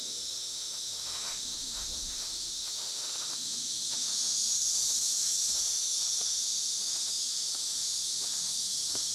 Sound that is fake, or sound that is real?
fake